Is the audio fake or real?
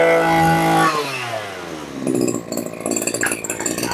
real